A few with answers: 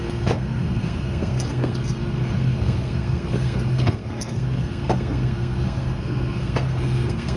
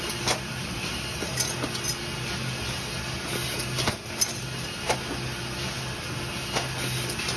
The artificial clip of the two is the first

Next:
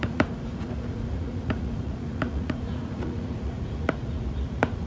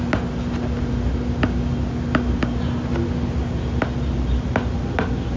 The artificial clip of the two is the first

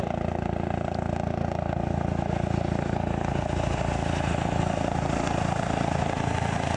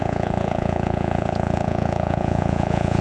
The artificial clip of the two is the second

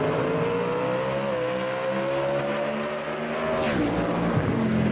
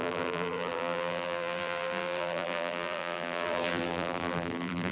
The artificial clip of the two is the second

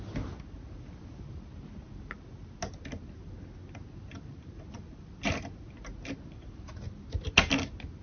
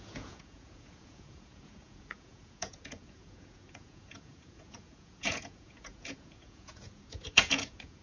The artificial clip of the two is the second